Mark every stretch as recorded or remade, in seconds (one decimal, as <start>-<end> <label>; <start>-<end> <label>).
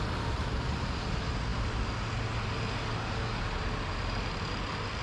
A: 0.0-5.0 recorded